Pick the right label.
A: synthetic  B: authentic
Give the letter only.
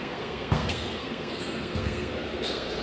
A